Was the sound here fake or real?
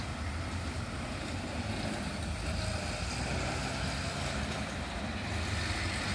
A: real